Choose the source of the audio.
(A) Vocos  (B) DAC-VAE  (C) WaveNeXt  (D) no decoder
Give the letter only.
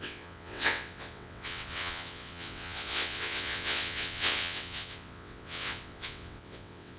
C